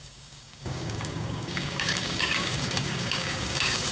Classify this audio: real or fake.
fake